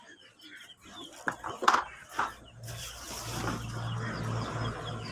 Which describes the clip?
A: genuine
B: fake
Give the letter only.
A